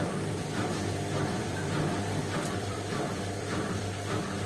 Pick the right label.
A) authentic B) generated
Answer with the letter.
B